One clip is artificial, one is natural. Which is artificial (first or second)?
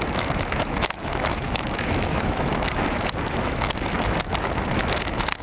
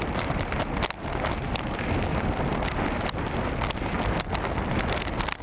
first